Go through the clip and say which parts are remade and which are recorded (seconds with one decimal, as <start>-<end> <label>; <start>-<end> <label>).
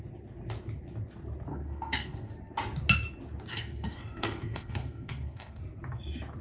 0.0-1.5 recorded; 1.5-2.3 remade; 2.3-3.5 recorded; 3.5-5.6 remade; 5.6-6.4 recorded